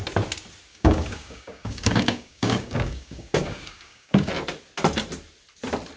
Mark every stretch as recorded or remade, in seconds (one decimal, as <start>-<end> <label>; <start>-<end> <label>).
0.0-0.7 recorded; 0.7-4.3 remade; 4.3-6.0 recorded